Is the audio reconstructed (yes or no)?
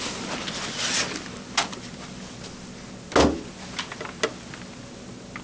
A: no